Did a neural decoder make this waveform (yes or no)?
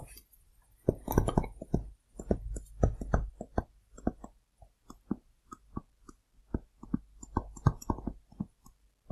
no